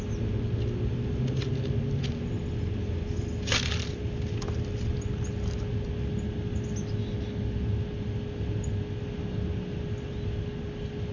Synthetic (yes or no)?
no